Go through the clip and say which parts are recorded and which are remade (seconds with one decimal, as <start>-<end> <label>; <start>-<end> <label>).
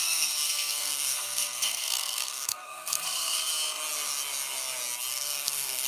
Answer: 0.0-3.5 remade; 3.5-5.1 recorded; 5.1-5.9 remade